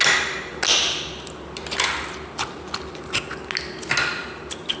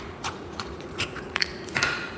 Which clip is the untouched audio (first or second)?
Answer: first